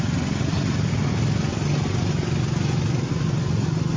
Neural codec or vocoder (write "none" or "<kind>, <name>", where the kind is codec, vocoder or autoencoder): none